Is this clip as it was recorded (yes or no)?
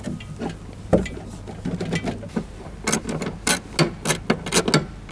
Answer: yes